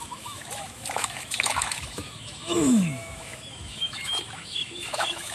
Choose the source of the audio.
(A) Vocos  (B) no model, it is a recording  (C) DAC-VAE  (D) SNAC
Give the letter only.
C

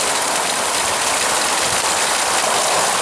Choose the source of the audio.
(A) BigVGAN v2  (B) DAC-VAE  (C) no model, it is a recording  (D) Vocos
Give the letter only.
C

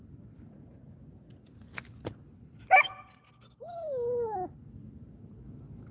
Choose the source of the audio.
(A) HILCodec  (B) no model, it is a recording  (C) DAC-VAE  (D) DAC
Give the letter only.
B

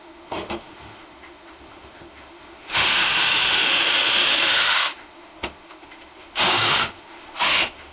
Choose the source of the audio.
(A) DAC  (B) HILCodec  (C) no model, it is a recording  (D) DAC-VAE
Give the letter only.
D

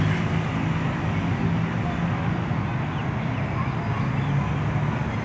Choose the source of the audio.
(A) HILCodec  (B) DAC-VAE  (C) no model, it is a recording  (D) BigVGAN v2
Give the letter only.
C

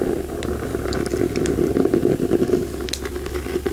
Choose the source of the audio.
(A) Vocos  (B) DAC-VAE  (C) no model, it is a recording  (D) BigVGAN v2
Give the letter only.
C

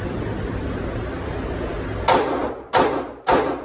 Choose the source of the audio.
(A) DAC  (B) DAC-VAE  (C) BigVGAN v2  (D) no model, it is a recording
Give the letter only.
D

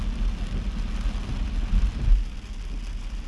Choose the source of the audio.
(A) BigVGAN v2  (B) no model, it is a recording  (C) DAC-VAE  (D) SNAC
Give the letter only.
B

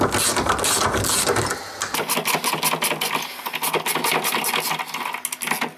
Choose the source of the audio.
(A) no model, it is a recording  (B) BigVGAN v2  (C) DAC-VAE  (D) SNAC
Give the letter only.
A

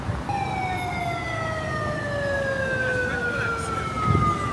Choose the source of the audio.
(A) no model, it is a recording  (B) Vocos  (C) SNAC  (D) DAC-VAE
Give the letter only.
A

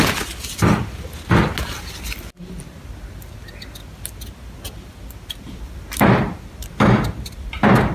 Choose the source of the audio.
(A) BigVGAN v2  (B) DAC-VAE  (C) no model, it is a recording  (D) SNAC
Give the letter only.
C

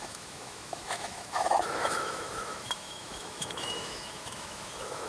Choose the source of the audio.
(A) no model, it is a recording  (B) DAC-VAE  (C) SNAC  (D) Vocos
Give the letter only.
B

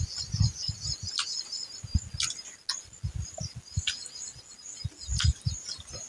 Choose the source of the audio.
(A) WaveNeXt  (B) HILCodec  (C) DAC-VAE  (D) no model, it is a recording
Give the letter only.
D